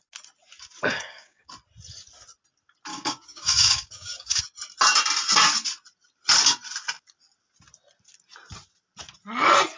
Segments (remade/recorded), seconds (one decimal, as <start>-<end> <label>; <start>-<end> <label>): 0.0-0.9 recorded; 0.9-1.5 remade; 1.5-2.9 recorded; 2.9-4.4 remade; 4.4-9.8 recorded